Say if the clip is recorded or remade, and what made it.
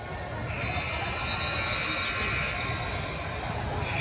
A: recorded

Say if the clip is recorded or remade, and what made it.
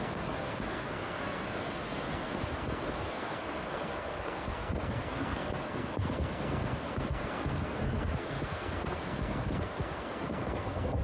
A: remade, codec, SNAC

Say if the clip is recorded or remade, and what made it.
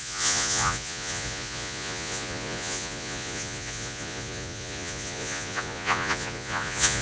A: remade, vocoder, Vocos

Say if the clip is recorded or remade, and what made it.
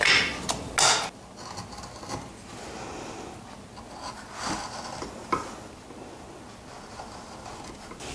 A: recorded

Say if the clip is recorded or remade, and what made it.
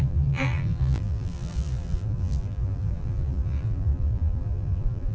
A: remade, vocoder, BigVGAN v2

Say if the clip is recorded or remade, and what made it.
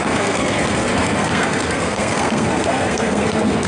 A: remade, codec, SNAC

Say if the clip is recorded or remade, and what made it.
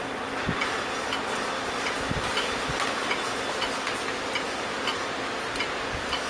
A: recorded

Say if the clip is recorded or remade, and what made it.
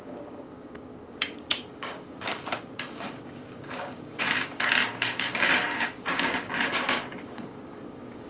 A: remade, codec, DAC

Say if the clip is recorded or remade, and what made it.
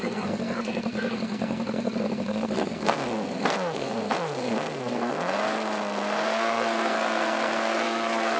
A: remade, codec, SNAC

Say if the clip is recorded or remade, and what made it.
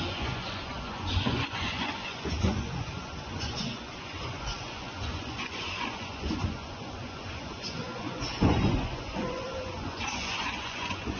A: remade, vocoder, Vocos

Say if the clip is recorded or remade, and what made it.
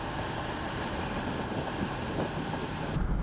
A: remade, vocoder, BigVGAN v2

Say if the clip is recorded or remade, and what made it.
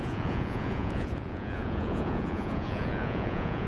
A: remade, vocoder, Vocos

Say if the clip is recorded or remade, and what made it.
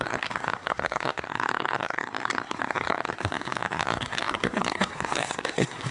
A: remade, codec, SNAC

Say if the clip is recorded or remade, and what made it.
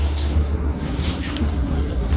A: remade, codec, SNAC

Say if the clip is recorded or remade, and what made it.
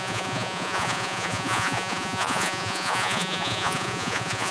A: remade, vocoder, Vocos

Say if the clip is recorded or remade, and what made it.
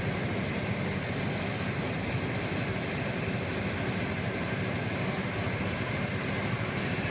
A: recorded